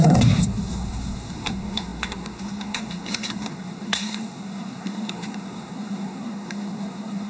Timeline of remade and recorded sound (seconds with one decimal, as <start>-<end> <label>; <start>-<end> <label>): 0.0-7.3 remade